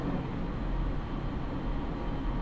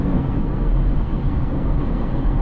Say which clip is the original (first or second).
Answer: first